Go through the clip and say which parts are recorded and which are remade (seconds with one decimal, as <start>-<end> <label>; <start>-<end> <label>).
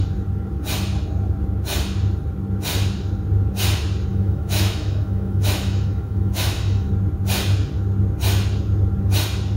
0.0-4.1 recorded; 4.1-6.9 remade; 6.9-9.6 recorded